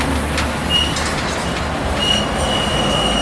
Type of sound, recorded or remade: recorded